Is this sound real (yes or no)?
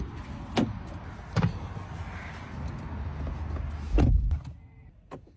yes